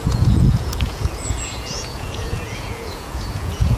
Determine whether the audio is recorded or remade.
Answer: remade